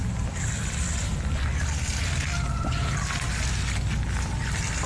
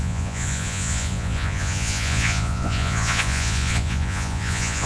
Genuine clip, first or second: first